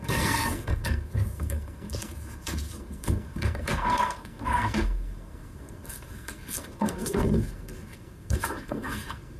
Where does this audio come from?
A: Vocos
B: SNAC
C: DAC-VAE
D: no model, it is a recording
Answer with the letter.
B